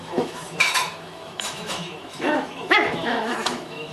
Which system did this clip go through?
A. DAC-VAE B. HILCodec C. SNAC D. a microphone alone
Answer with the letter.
A